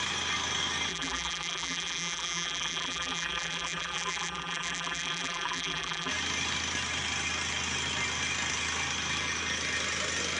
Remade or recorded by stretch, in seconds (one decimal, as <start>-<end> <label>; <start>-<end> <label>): 0.0-0.9 recorded; 0.9-6.1 remade; 6.1-10.4 recorded